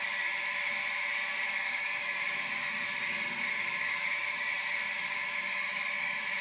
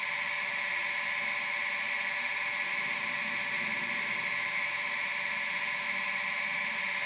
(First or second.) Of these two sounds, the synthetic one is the first